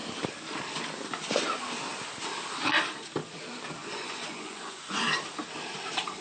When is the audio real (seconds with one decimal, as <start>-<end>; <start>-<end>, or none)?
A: 0.0-3.8; 5.0-6.2